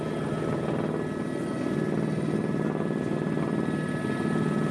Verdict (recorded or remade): recorded